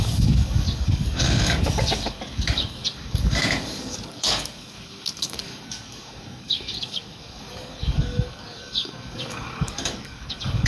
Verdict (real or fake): fake